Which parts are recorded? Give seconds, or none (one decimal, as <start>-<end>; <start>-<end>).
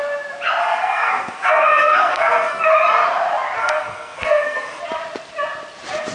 0.0-0.6; 2.7-3.6; 4.8-6.1